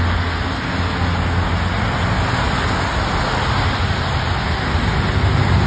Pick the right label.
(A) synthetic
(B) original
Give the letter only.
B